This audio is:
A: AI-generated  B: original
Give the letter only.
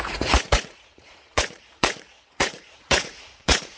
A